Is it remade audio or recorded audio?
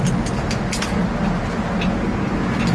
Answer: recorded